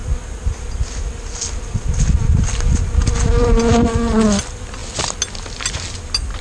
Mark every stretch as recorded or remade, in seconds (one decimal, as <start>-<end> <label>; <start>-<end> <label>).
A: 0.0-6.4 recorded